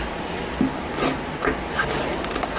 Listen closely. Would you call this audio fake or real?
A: real